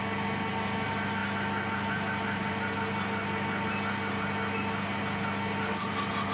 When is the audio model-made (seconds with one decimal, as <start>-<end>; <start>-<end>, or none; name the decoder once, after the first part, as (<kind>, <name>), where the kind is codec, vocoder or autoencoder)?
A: none